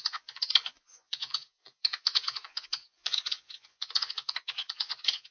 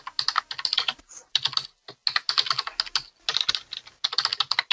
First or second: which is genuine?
second